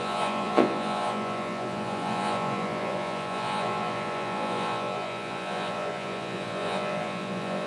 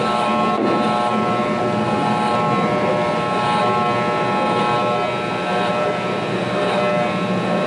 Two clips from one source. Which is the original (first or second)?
second